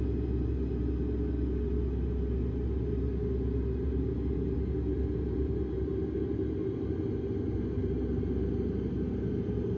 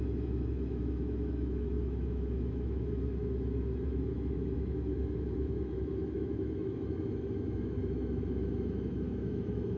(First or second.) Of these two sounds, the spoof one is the second